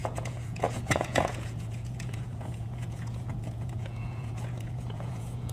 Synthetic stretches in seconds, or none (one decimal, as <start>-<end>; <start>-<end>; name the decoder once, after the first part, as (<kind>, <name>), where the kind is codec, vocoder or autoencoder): 0.0-5.5 (vocoder, Vocos)